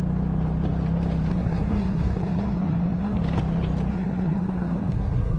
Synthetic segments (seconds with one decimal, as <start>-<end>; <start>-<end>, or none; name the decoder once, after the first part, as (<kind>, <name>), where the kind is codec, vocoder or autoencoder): 1.3-3.2 (codec, SNAC); 3.9-5.4